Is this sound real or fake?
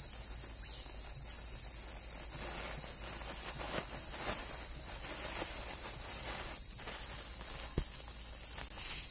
real